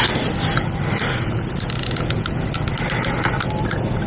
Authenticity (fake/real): real